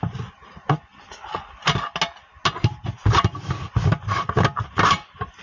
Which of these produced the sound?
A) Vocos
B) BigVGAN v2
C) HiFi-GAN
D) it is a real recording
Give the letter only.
D